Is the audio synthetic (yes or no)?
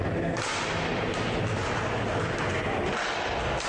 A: no